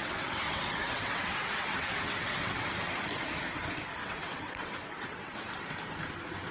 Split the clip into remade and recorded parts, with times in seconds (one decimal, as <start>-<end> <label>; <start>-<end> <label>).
0.0-2.7 remade; 2.7-4.0 recorded; 4.0-5.6 remade; 5.6-6.5 recorded